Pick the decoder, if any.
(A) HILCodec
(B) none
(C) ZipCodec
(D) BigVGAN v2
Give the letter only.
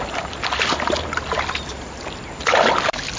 B